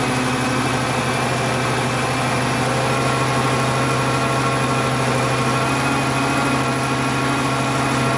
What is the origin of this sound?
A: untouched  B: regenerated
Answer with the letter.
A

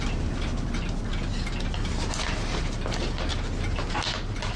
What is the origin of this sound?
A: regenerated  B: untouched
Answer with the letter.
B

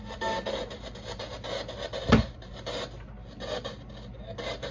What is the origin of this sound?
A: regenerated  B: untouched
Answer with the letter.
B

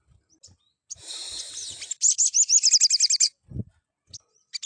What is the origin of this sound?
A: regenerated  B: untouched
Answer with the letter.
B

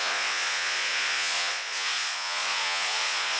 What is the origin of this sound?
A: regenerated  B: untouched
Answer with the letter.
A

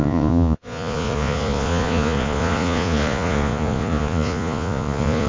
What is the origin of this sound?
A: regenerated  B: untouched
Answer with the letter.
A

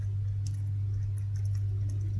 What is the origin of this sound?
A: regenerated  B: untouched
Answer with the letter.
B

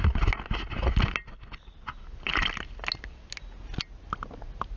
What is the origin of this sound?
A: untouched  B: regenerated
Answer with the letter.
A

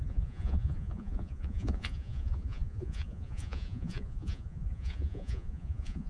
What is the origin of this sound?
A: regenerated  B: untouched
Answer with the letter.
A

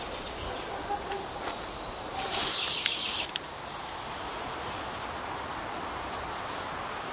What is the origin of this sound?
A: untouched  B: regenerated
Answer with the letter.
A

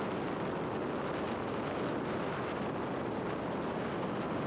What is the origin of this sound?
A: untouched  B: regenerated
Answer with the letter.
A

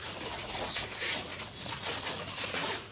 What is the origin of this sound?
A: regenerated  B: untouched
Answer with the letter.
A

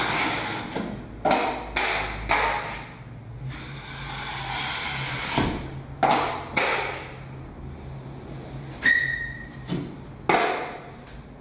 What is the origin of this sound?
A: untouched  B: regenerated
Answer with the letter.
A